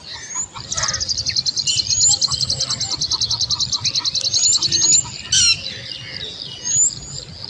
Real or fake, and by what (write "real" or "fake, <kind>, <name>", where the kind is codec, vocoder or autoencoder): real